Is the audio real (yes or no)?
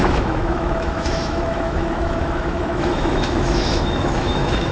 no